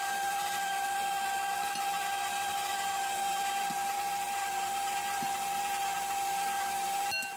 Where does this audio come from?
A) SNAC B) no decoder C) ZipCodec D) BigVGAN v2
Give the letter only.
B